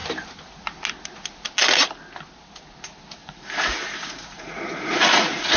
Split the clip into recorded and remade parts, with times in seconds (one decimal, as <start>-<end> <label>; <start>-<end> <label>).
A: 0.0-3.2 recorded; 3.2-5.6 remade